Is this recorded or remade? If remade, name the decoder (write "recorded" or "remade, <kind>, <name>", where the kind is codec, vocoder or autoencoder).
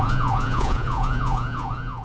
remade, vocoder, Vocos